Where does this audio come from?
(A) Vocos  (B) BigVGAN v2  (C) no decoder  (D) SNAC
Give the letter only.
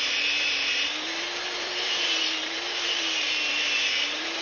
B